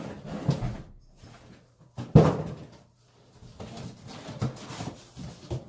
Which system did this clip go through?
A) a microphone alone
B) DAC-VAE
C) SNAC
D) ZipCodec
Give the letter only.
A